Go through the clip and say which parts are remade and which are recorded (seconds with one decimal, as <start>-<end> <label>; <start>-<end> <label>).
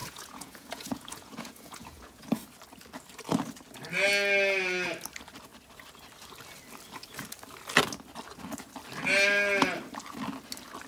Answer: 0.0-2.3 remade; 2.3-10.9 recorded